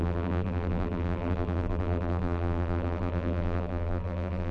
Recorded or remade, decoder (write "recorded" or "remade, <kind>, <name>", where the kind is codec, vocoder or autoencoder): remade, vocoder, BigVGAN v2